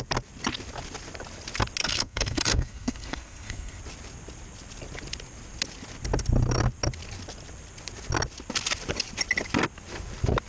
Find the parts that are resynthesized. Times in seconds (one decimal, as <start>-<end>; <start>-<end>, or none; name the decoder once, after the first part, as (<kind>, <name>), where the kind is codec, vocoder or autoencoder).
1.8-3.8 (codec, SNAC)